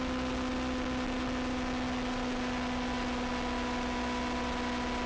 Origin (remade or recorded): recorded